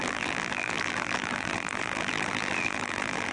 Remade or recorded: remade